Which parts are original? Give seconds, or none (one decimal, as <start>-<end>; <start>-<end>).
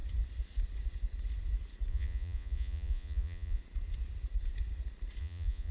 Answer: 0.0-1.9; 3.6-5.2